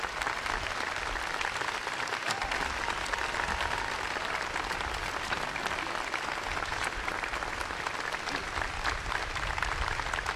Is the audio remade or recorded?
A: recorded